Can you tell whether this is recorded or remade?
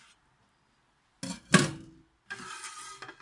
recorded